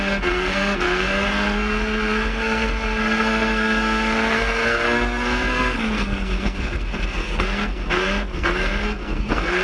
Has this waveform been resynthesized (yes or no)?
yes